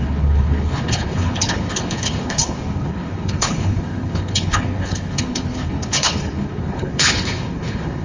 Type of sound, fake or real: fake